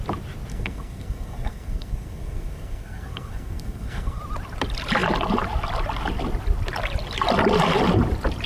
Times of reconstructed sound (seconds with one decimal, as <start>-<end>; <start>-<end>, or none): 0.5-4.2